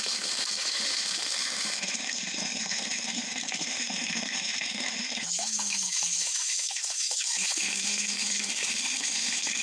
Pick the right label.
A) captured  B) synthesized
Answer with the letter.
B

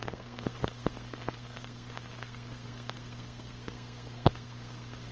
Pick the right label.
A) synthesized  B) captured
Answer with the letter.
A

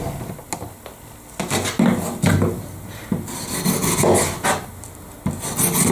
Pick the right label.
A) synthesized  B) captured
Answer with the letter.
B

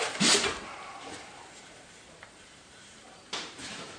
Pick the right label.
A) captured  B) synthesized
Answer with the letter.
B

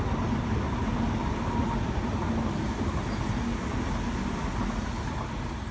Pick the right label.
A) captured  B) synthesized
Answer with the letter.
A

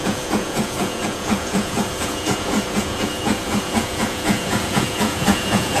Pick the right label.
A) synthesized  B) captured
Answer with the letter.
A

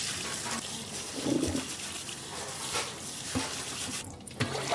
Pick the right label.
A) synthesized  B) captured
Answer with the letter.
B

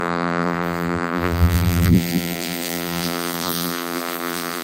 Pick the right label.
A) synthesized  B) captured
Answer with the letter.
A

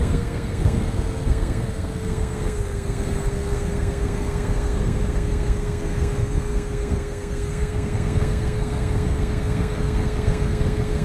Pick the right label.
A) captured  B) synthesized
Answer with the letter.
B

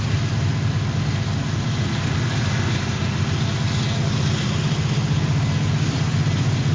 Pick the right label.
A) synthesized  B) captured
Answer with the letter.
B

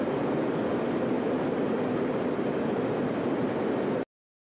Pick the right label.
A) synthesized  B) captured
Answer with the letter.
B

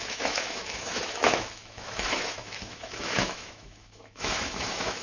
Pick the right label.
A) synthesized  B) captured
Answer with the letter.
A